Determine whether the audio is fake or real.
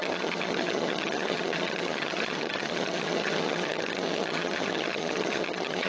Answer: fake